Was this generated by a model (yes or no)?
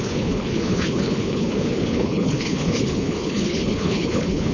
yes